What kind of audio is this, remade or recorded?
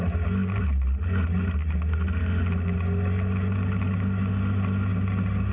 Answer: recorded